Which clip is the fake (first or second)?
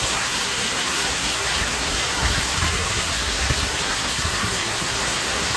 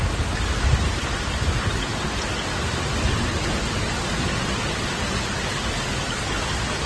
first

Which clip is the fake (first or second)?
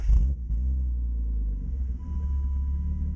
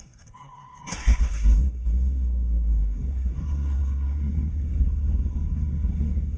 second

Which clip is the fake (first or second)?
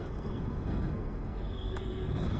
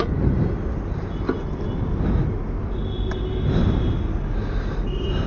first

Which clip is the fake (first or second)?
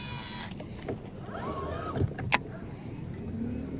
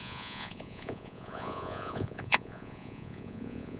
second